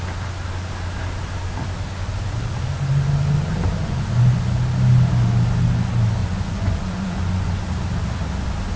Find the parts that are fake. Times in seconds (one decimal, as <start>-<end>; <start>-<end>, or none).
3.8-4.4; 6.2-7.7